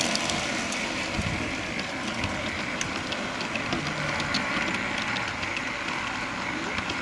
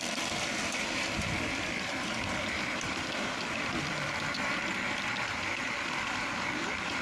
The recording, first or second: first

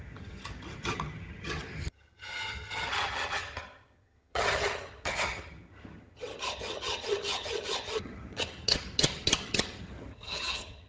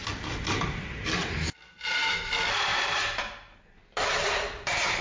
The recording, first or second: second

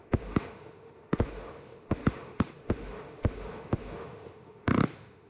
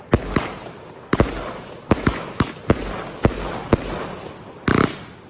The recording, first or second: second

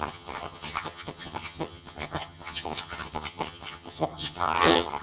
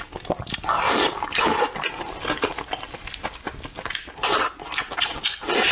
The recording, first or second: second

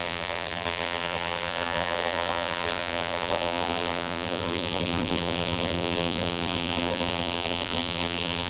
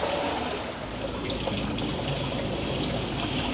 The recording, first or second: second